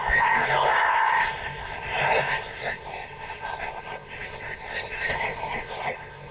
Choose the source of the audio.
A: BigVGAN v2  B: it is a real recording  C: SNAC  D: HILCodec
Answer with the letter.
C